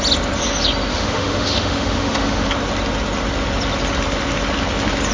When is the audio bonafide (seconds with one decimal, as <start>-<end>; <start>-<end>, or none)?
0.0-0.9; 2.5-5.1